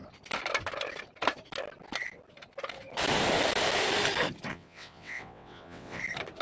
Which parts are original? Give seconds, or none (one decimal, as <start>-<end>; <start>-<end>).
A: 0.0-4.5; 6.0-6.4